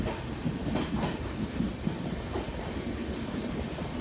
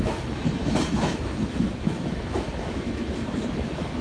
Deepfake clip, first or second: second